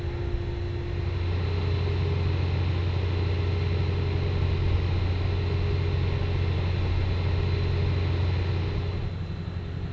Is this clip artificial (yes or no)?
no